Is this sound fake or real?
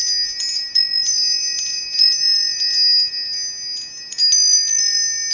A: real